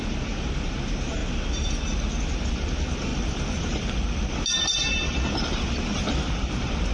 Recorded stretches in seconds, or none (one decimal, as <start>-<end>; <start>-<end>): 0.0-6.9